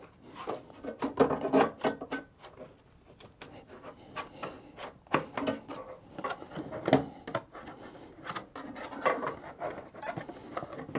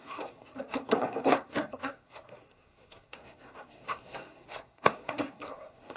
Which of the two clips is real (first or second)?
first